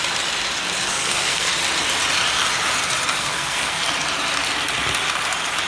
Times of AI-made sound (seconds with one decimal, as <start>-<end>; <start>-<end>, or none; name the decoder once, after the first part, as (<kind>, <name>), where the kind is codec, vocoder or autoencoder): 0.9-1.5 (codec, SNAC); 3.2-3.8